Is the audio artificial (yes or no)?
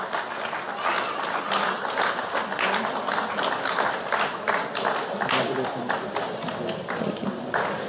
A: no